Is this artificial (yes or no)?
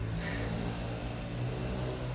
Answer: no